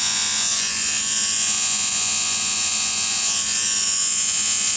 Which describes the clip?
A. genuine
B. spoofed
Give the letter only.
B